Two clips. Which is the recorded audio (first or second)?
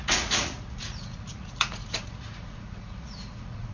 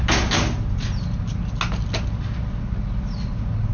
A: second